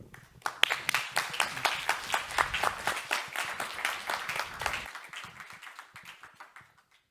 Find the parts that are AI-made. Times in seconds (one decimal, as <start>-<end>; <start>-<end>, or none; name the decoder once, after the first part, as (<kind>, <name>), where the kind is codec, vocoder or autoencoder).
none